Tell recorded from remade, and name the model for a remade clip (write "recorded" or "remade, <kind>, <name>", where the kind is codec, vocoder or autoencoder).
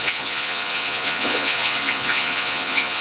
remade, vocoder, Vocos